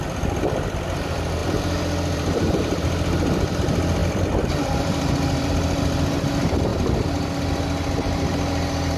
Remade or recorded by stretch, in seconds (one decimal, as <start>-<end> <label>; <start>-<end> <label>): 0.0-1.4 recorded; 1.4-2.6 remade; 2.6-4.0 recorded; 4.0-5.5 remade; 5.5-6.7 recorded; 6.7-7.3 remade; 7.3-9.0 recorded